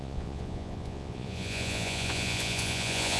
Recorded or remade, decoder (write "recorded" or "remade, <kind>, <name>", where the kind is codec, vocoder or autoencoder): remade, vocoder, Vocos